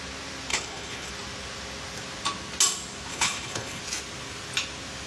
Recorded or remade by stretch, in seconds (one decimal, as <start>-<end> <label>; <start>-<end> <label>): 0.0-0.5 recorded; 0.5-1.1 remade; 1.1-3.1 recorded; 3.1-3.8 remade; 3.8-5.1 recorded